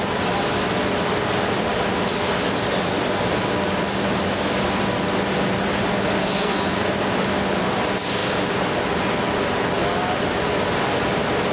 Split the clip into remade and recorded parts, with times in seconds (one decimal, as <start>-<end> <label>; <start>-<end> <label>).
0.0-6.2 recorded; 6.2-7.0 remade; 7.0-11.5 recorded